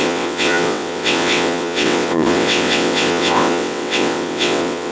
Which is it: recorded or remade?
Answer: remade